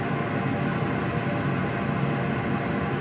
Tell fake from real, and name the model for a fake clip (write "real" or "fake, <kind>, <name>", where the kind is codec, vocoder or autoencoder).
real